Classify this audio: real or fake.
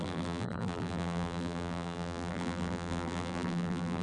fake